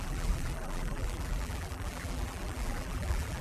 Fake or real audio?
fake